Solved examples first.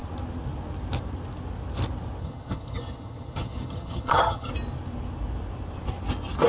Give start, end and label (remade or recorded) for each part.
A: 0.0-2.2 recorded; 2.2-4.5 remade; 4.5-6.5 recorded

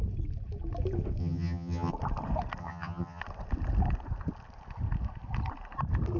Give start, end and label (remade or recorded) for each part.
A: 0.0-1.2 recorded; 1.2-1.9 remade; 1.9-2.6 recorded; 2.6-3.2 remade; 3.2-6.2 recorded

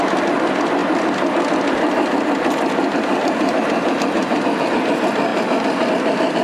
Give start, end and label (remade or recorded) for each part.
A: 0.0-6.4 recorded

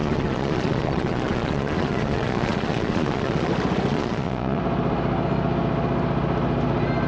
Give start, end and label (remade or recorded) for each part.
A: 0.0-3.5 remade; 3.5-3.9 recorded; 3.9-4.6 remade; 4.6-7.1 recorded

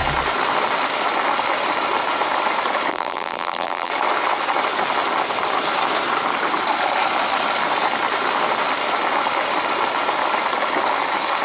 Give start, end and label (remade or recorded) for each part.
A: 0.0-2.9 recorded; 2.9-3.9 remade; 3.9-11.4 recorded

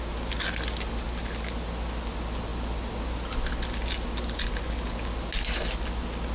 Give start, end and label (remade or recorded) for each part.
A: 0.0-6.3 recorded

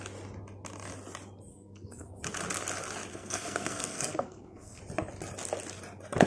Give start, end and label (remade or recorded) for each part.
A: 0.0-1.5 recorded; 1.5-2.2 remade; 2.2-3.1 recorded; 3.1-4.8 remade; 4.8-6.3 recorded